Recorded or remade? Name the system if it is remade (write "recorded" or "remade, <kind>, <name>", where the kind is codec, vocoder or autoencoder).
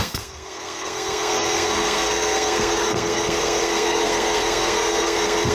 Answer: remade, codec, SNAC